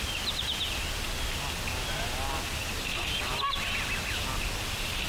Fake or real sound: real